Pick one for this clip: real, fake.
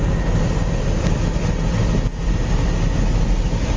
real